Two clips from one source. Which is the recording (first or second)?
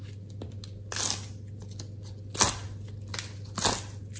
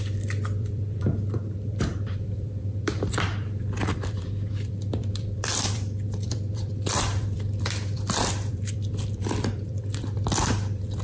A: first